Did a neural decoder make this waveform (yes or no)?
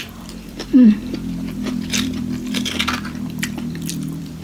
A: yes